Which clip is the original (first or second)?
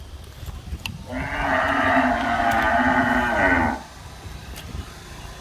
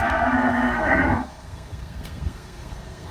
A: first